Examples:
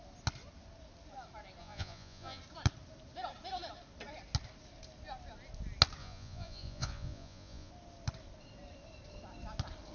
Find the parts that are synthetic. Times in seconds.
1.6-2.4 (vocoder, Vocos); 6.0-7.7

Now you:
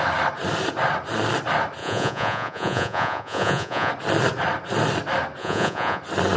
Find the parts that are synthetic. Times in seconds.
1.8-3.9 (vocoder, Vocos); 5.4-6.0

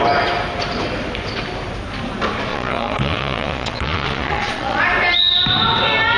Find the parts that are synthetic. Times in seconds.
2.5-4.8 (vocoder, Vocos)

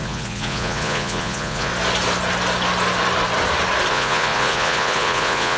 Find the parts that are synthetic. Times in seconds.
0.0-1.7 (vocoder, Vocos); 3.9-5.6

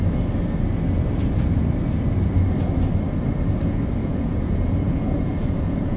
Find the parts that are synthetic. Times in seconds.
4.0-6.0 (vocoder, Vocos)